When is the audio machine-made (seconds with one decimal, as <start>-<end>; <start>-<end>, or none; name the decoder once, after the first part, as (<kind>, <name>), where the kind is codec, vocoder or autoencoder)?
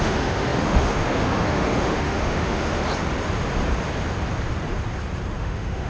0.0-2.8 (autoencoder, DAC-VAE); 5.4-5.9